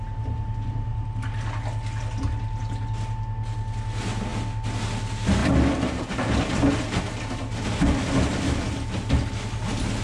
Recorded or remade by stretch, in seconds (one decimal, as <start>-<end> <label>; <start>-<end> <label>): 0.0-10.0 recorded